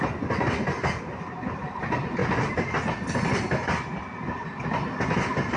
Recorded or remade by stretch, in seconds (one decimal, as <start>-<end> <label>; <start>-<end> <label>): 0.0-5.6 recorded